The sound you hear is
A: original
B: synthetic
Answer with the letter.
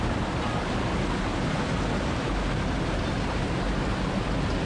A